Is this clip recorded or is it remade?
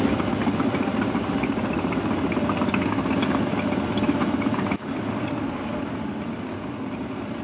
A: recorded